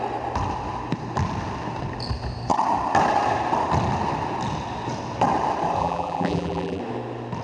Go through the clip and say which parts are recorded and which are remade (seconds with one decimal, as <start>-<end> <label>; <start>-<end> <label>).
0.0-5.8 recorded; 5.8-6.8 remade; 6.8-7.4 recorded